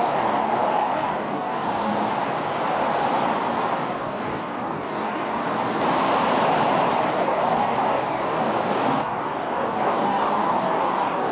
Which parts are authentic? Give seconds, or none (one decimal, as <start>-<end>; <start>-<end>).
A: 1.9-3.7; 5.4-7.1